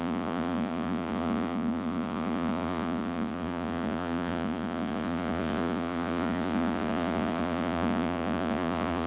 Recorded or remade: remade